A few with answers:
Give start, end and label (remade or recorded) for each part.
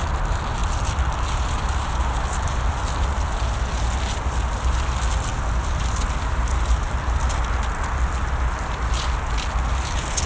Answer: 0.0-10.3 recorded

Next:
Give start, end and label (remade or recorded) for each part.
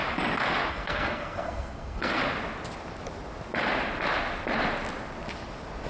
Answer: 0.0-0.7 recorded; 0.7-2.2 remade; 2.2-5.9 recorded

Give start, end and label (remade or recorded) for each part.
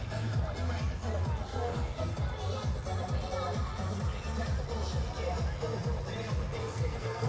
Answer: 0.0-1.5 recorded; 1.5-2.1 remade; 2.1-6.6 recorded; 6.6-7.3 remade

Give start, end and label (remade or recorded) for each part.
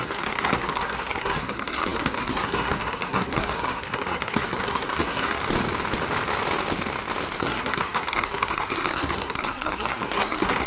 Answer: 0.0-5.4 remade; 5.4-7.4 recorded; 7.4-10.7 remade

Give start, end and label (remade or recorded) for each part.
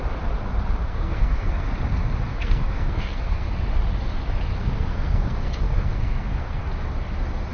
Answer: 0.0-0.8 recorded; 0.8-1.7 remade; 1.7-2.3 recorded; 2.3-3.5 remade; 3.5-4.6 recorded; 4.6-6.6 remade; 6.6-7.5 recorded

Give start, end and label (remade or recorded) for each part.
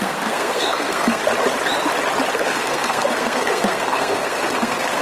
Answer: 0.0-1.2 remade; 1.2-2.3 recorded; 2.3-5.0 remade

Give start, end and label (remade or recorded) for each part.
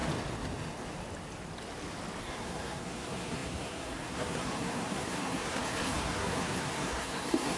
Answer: 0.0-2.2 recorded; 2.2-7.6 remade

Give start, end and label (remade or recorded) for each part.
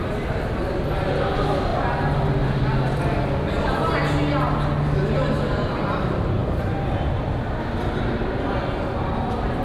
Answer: 0.0-9.6 recorded